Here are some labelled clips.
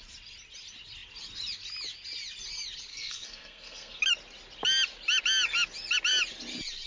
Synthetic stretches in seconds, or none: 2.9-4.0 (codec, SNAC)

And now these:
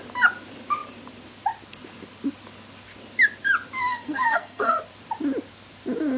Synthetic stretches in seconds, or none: 3.8-4.8 (codec, SNAC)

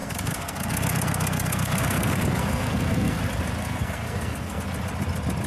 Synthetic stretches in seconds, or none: 0.0-3.2 (codec, SNAC); 3.6-4.6

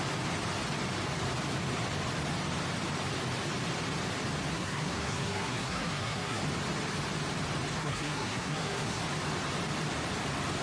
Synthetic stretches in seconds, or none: 4.5-6.4 (codec, SNAC); 7.8-9.0